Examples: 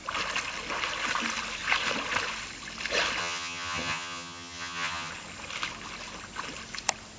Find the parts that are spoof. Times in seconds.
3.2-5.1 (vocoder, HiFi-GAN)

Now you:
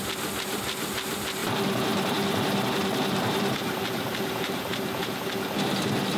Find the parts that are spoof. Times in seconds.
1.4-5.1 (vocoder, BigVGAN v2)

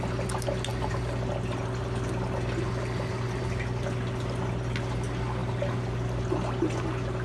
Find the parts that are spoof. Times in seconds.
none